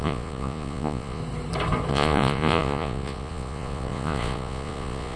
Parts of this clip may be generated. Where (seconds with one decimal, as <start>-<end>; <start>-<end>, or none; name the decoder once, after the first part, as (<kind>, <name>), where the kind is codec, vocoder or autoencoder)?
0.0-1.2 (vocoder, Vocos); 1.9-5.2